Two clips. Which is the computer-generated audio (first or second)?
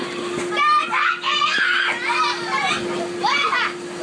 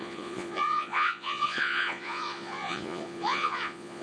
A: second